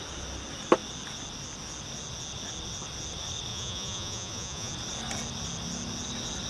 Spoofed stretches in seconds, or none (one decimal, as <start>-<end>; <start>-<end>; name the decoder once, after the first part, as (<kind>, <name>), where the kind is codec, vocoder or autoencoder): 3.5-4.7 (vocoder, Vocos)

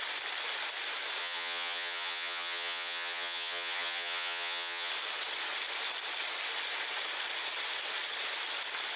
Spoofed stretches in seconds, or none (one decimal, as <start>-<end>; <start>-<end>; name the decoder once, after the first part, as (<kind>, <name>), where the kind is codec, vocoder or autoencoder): 1.2-4.9 (vocoder, HiFi-GAN)

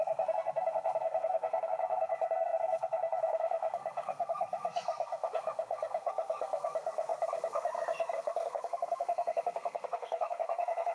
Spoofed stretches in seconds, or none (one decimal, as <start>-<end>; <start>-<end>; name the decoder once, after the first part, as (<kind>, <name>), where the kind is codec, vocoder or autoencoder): 0.0-10.9 (codec, SNAC)

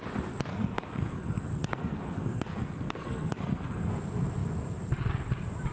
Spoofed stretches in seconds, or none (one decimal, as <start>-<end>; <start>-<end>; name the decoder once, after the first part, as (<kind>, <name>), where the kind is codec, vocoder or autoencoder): 0.5-3.9 (codec, SNAC)

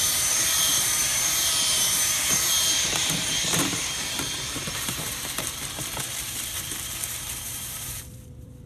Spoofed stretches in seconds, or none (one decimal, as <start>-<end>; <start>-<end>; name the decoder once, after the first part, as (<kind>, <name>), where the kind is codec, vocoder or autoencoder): 0.0-8.7 (vocoder, BigVGAN v2)

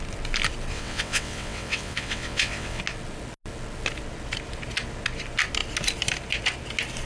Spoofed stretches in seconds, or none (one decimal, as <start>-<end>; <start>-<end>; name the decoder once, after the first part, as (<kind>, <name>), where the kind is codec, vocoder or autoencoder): 0.7-2.8 (vocoder, WaveNeXt)